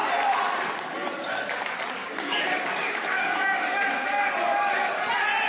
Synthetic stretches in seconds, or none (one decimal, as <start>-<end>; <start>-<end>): 2.0-3.8